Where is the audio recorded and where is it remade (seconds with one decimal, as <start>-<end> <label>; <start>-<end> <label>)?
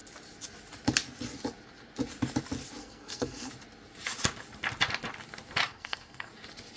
0.0-2.8 recorded; 2.8-3.5 remade; 3.5-5.7 recorded; 5.7-6.3 remade; 6.3-6.8 recorded